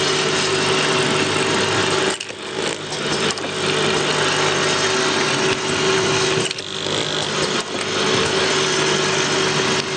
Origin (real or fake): real